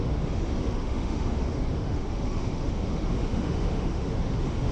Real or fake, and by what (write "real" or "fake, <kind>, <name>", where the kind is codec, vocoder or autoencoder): fake, autoencoder, DAC-VAE